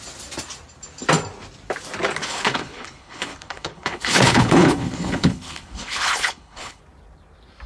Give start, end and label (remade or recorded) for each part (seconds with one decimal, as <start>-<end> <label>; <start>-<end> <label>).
0.0-2.2 recorded; 2.2-6.8 remade; 6.8-7.7 recorded